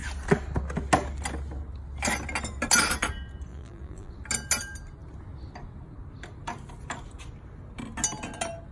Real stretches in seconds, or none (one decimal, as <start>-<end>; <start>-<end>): 0.0-3.5; 4.1-8.7